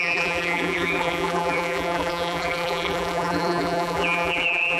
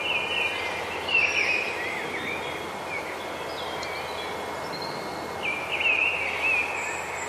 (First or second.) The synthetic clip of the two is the first